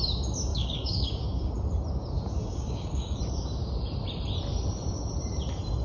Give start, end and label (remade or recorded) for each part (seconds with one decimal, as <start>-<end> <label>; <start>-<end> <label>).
0.0-0.5 recorded; 0.5-1.5 remade; 1.5-2.4 recorded; 2.4-3.2 remade; 3.2-5.8 recorded